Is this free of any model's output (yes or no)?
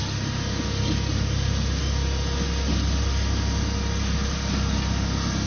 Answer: yes